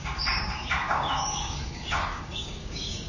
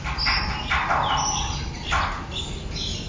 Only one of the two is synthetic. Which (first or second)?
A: first